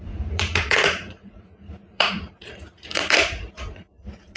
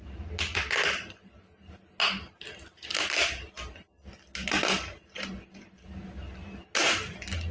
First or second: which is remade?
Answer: first